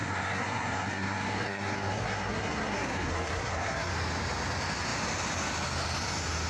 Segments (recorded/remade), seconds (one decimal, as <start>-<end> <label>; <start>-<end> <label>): 0.0-3.9 remade; 3.9-6.5 recorded